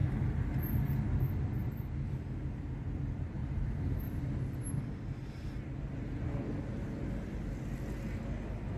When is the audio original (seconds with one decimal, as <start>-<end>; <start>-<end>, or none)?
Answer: 0.0-3.4; 4.2-8.8